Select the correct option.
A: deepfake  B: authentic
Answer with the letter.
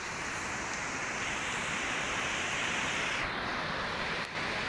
B